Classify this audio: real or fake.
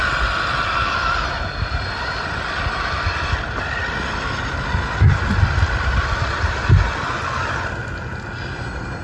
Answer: real